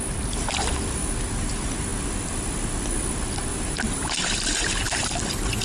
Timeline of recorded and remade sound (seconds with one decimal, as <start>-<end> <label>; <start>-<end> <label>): 0.0-3.5 recorded; 3.5-4.3 remade; 4.3-5.6 recorded